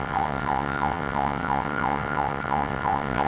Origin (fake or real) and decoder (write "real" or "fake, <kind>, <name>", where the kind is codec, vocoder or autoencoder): fake, vocoder, WaveNeXt